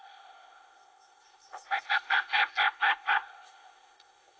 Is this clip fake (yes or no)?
yes